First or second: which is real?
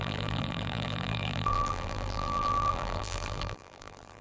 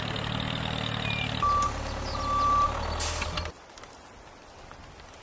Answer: second